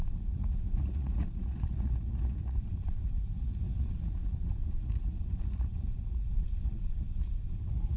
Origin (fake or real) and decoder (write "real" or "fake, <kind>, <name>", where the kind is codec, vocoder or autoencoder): fake, vocoder, Vocos